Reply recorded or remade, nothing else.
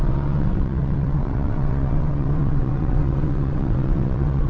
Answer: remade